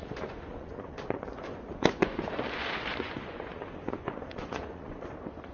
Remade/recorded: remade